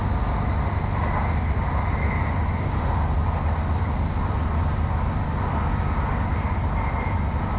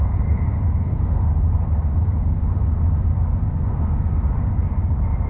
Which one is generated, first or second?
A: second